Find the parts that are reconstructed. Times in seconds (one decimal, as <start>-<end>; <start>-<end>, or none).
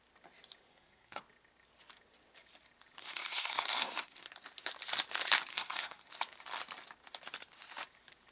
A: 0.7-1.2; 3.0-4.3; 5.5-6.1